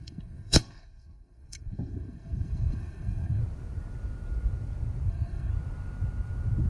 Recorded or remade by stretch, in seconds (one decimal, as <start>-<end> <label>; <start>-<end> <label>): 0.0-3.4 remade; 3.4-5.1 recorded; 5.1-5.5 remade; 5.5-6.7 recorded